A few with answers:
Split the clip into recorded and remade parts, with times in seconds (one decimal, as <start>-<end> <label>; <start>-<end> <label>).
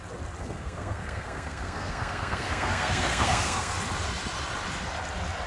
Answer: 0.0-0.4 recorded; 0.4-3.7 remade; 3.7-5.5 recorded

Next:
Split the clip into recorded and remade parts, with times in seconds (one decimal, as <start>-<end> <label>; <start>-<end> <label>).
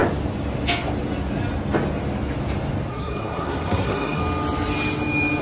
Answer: 0.0-2.9 recorded; 2.9-4.2 remade; 4.2-5.4 recorded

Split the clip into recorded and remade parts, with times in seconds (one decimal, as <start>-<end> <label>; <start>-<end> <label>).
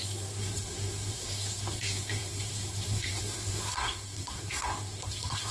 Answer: 0.0-5.5 remade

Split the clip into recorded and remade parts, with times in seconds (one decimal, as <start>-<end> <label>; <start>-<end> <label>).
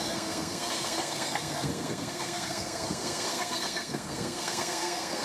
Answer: 0.0-5.2 remade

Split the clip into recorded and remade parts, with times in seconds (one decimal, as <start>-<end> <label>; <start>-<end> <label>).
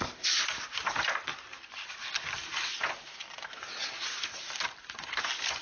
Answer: 0.0-5.6 recorded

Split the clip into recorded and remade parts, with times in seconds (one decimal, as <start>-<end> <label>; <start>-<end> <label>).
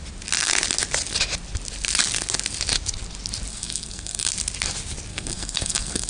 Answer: 0.0-3.5 recorded; 3.5-4.3 remade; 4.3-5.1 recorded; 5.1-6.1 remade